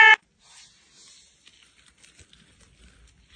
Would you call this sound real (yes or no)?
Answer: yes